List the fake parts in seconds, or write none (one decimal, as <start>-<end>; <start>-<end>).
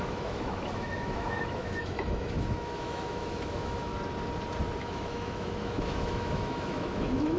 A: 0.0-3.9; 4.8-7.4